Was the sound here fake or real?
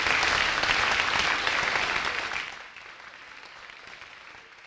real